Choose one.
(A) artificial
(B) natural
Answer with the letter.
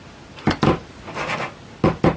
B